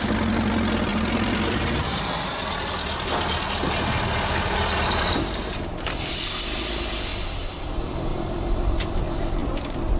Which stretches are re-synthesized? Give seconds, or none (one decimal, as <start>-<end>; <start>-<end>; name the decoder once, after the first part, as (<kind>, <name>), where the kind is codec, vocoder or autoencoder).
0.9-2.7 (vocoder, BigVGAN v2); 8.1-9.0; 9.4-10.0